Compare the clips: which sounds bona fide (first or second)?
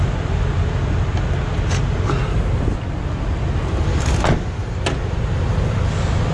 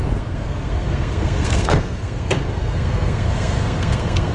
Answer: first